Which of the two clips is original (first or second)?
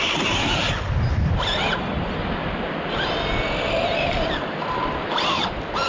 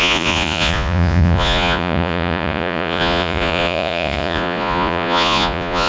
first